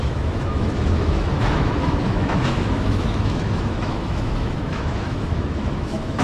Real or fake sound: fake